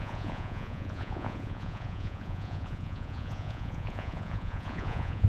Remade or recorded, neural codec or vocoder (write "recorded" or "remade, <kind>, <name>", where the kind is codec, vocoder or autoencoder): remade, vocoder, Vocos